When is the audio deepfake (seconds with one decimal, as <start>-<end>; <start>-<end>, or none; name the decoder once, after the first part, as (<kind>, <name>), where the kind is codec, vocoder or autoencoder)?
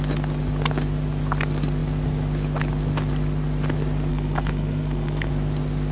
4.1-5.3 (codec, SNAC)